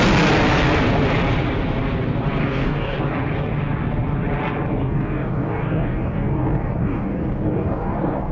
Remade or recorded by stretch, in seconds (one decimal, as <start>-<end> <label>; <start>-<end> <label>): 0.0-2.4 recorded; 2.4-3.0 remade; 3.0-4.8 recorded; 4.8-8.3 remade